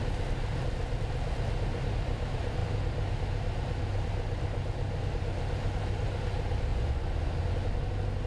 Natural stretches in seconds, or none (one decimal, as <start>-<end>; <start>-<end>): 0.0-6.7; 7.3-8.3